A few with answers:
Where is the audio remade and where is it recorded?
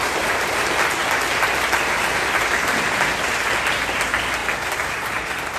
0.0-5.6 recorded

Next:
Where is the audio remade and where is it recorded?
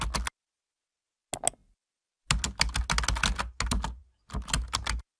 0.0-5.2 recorded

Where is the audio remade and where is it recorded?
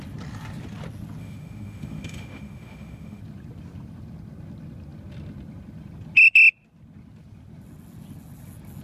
0.0-1.2 recorded; 1.2-3.2 remade; 3.2-8.8 recorded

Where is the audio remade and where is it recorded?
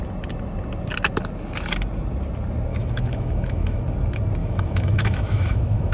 0.0-2.7 recorded; 2.7-3.8 remade; 3.8-4.4 recorded; 4.4-5.9 remade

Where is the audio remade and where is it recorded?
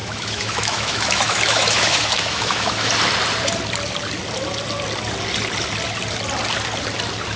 0.0-2.9 remade; 2.9-7.4 recorded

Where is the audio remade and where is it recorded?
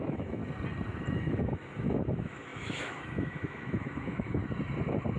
0.0-0.4 remade; 0.4-1.1 recorded; 1.1-4.4 remade; 4.4-5.2 recorded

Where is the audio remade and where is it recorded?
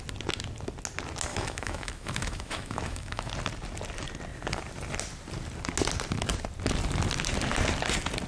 0.0-1.3 recorded; 1.3-3.3 remade; 3.3-8.3 recorded